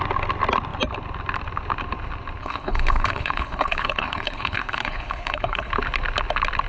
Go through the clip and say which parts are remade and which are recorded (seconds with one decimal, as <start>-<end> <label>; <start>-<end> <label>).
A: 0.0-2.4 recorded; 2.4-5.7 remade; 5.7-6.7 recorded